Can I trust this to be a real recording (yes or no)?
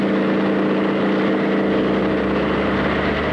yes